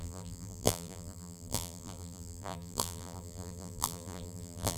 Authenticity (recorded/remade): remade